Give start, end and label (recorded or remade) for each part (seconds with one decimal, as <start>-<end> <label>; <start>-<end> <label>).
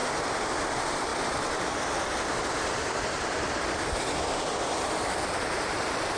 0.0-6.2 recorded